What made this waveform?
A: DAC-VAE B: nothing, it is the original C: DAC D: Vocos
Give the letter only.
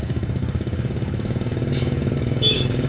C